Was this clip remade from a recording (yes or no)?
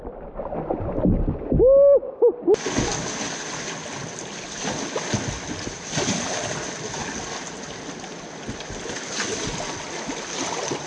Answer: no